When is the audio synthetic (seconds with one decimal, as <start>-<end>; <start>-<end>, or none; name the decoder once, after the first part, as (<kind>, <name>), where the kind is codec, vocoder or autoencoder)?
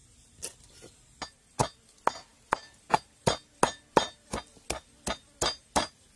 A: none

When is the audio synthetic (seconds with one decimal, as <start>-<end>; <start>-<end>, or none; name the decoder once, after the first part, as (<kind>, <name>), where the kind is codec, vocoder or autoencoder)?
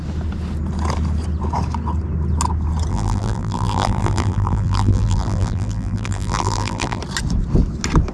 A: 2.9-7.0 (vocoder, BigVGAN v2)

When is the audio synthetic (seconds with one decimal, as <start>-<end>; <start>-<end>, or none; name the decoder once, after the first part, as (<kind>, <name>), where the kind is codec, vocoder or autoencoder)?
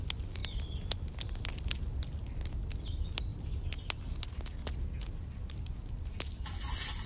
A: none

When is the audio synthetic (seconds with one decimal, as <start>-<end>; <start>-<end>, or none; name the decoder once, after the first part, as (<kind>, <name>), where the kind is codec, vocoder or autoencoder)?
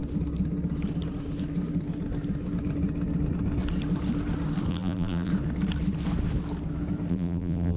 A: 4.7-5.3 (vocoder, BigVGAN v2); 7.1-7.8